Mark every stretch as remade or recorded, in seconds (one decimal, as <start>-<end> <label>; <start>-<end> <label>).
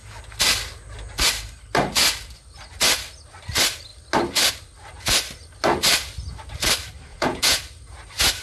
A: 0.0-7.1 recorded; 7.1-7.6 remade; 7.6-8.4 recorded